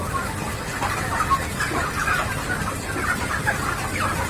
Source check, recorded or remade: recorded